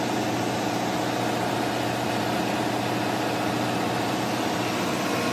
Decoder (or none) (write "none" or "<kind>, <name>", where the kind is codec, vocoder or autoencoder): none